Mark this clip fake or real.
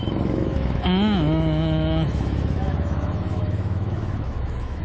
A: fake